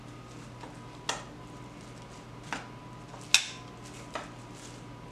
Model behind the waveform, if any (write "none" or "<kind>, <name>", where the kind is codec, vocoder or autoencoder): none